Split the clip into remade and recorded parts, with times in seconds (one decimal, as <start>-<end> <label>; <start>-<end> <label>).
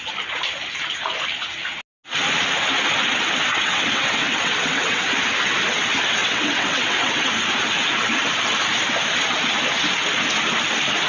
0.0-3.5 recorded; 3.5-5.1 remade; 5.1-6.2 recorded; 6.2-7.3 remade; 7.3-11.1 recorded